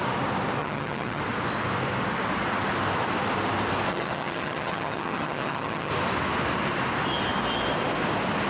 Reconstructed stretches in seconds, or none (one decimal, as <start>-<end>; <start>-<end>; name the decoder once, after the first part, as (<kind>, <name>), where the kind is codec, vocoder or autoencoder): 0.6-1.2 (vocoder, HiFi-GAN); 3.9-5.9